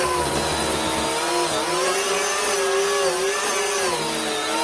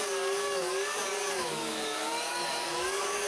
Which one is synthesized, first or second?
second